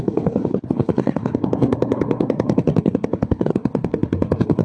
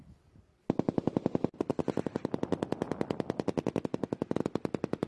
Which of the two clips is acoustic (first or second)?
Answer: second